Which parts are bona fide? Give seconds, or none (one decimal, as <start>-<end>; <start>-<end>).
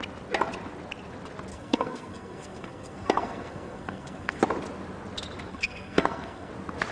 0.0-1.5; 4.4-5.5; 6.5-6.9